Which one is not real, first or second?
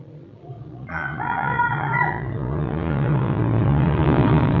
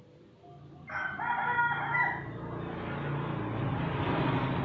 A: first